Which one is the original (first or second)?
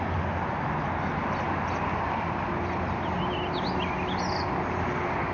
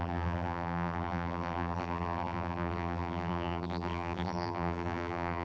first